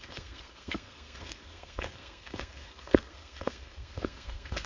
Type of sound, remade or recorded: remade